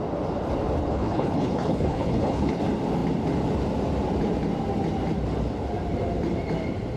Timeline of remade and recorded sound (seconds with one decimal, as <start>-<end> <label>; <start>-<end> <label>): 0.0-0.8 recorded; 0.8-2.6 remade; 2.6-7.0 recorded